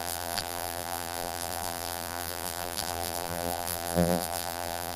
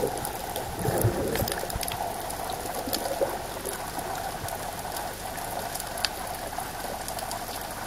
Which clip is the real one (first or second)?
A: second